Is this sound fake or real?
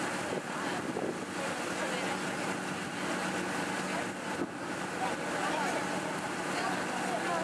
real